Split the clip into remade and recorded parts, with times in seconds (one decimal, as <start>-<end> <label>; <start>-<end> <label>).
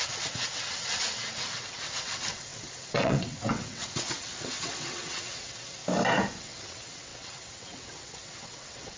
0.0-5.8 remade; 5.8-6.4 recorded; 6.4-9.0 remade